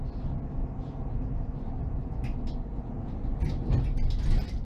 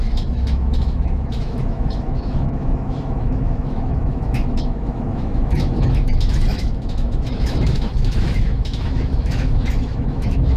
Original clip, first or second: first